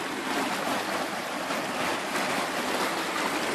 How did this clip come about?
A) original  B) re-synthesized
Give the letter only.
A